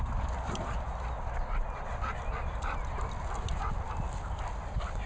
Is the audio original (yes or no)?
yes